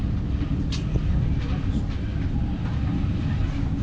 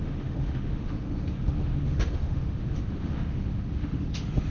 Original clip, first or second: first